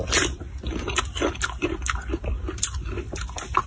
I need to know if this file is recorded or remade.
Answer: recorded